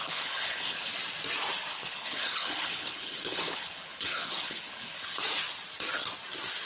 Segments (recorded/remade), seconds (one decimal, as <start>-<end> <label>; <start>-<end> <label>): 0.0-0.9 remade; 0.9-1.7 recorded; 1.7-5.2 remade; 5.2-6.7 recorded